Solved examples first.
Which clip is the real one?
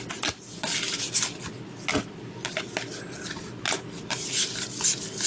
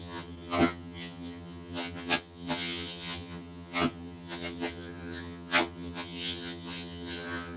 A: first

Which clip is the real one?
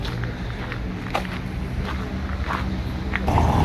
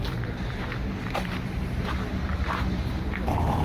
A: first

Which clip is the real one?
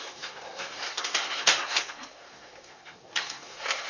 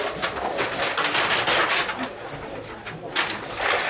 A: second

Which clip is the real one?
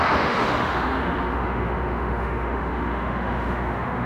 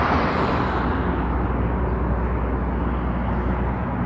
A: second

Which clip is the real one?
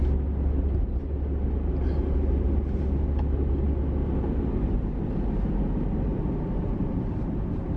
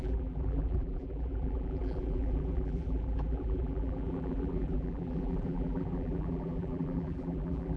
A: first